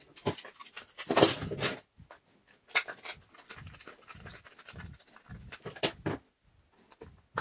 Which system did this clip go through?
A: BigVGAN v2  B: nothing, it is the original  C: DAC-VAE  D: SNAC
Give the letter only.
B